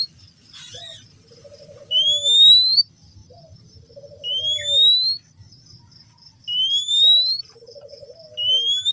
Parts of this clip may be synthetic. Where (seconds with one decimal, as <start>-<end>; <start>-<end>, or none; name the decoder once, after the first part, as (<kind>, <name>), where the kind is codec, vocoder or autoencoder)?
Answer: none